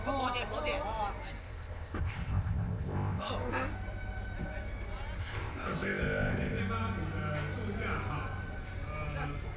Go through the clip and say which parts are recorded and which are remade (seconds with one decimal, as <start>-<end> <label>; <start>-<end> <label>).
0.0-1.4 recorded; 1.4-3.3 remade; 3.3-5.2 recorded; 5.2-6.6 remade; 6.6-9.6 recorded